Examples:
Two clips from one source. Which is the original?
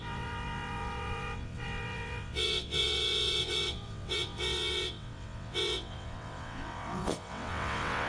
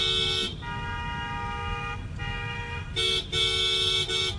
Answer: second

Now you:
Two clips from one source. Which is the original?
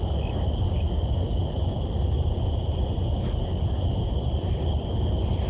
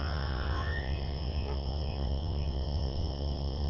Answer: first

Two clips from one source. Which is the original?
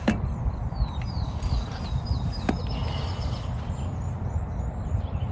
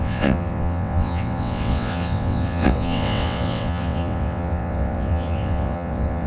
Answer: first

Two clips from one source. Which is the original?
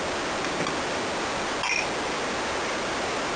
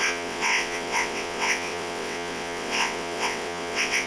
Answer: first